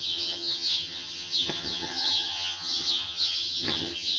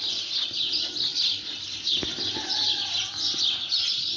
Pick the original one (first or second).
second